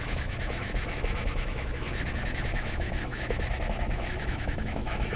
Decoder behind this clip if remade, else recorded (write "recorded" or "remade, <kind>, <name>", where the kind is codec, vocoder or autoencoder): remade, autoencoder, DAC-VAE